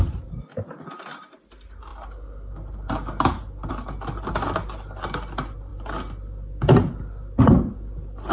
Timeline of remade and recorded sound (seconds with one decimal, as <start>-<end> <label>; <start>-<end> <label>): 0.0-8.3 recorded